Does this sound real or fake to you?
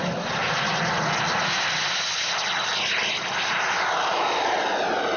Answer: real